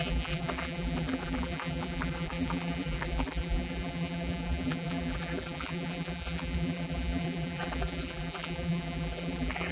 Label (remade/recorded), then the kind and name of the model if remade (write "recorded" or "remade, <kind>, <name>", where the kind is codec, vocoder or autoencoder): remade, vocoder, BigVGAN v2